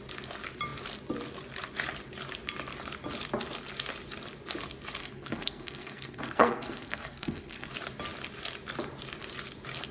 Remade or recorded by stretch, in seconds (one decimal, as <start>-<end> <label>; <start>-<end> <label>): 0.0-5.0 recorded; 5.0-7.7 remade; 7.7-9.9 recorded